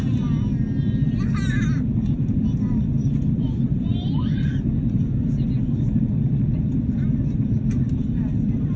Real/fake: real